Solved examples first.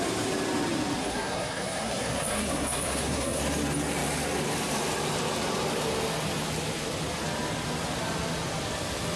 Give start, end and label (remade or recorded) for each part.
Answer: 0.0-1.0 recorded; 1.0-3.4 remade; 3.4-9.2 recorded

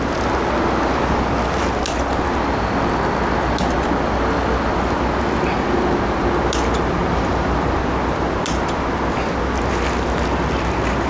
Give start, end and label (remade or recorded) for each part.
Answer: 0.0-11.1 recorded

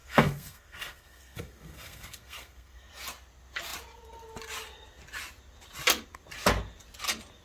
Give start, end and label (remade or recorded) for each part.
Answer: 0.0-2.9 remade; 2.9-7.4 recorded

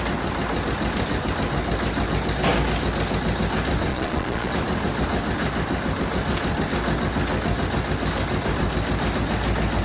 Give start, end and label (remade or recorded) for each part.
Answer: 0.0-3.9 recorded; 3.9-4.5 remade; 4.5-9.8 recorded

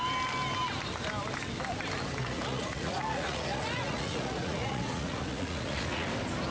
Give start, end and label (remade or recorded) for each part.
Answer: 0.0-2.2 recorded; 2.2-6.1 remade; 6.1-6.5 recorded

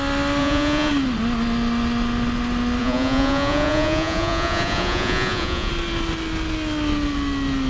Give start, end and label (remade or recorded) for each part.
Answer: 0.0-0.4 recorded; 0.4-0.9 remade; 0.9-2.8 recorded; 2.8-5.7 remade; 5.7-7.7 recorded